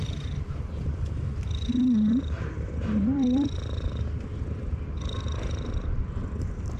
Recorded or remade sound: remade